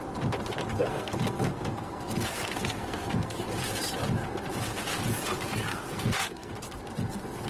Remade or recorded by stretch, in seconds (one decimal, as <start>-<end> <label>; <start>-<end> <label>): 0.0-0.7 recorded; 0.7-3.4 remade; 3.4-5.7 recorded; 5.7-6.5 remade; 6.5-7.5 recorded